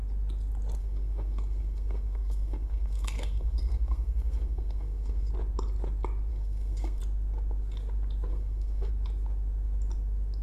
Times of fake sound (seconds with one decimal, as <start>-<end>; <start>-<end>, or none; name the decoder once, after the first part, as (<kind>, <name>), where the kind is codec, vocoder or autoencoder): 0.8-5.3 (codec, SNAC); 6.3-7.0; 8.3-8.9